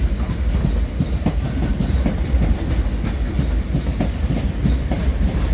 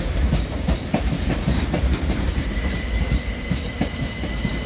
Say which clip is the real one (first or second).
first